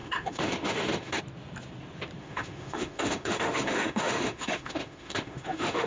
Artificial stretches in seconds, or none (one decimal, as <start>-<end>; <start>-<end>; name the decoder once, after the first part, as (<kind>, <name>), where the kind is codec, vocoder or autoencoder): 0.0-1.2 (autoencoder, DAC-VAE); 2.2-5.9